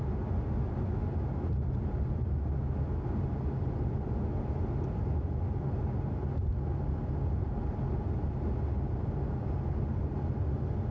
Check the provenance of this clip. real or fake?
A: real